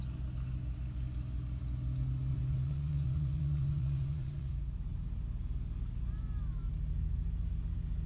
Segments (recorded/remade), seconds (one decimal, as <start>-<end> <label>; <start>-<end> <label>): 0.0-2.3 recorded; 2.3-4.5 remade; 4.5-8.1 recorded

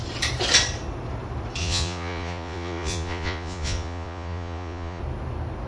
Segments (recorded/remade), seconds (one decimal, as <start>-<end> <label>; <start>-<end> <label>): 0.0-1.6 recorded; 1.6-5.0 remade; 5.0-5.7 recorded

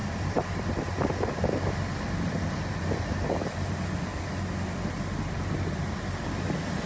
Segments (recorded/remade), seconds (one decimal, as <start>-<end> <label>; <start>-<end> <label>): 0.0-6.9 recorded

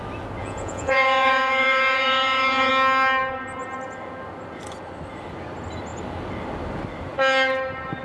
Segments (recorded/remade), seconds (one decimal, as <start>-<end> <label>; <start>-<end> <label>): 0.0-0.4 recorded; 0.4-2.7 remade; 2.7-8.0 recorded